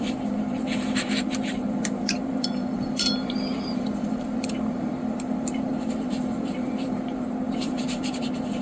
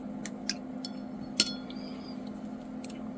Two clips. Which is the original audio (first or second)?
second